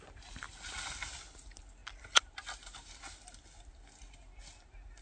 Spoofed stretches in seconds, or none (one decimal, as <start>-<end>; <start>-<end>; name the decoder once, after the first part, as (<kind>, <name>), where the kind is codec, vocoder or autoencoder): none